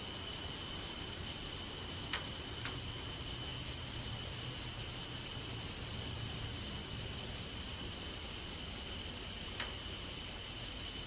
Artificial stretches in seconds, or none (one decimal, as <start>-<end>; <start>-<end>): none